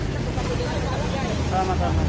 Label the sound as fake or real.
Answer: real